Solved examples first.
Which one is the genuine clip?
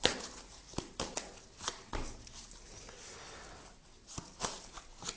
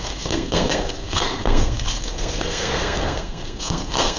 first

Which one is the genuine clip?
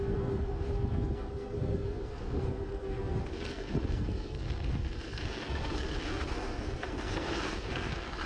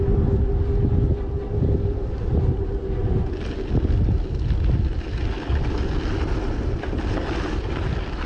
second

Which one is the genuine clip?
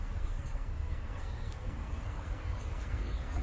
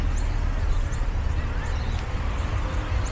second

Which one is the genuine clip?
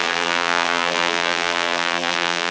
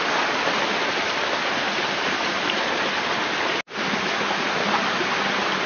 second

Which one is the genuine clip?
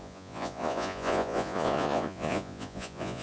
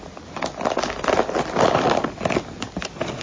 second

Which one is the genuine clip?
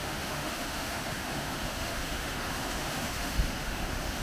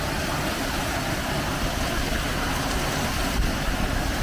second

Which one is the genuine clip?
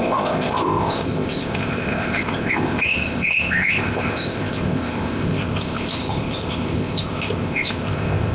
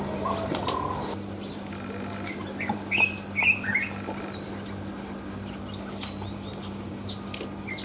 second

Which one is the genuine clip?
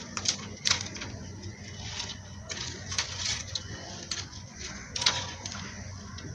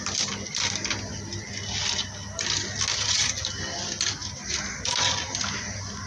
second